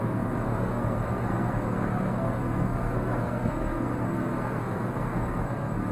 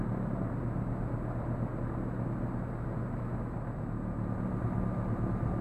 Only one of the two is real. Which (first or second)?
second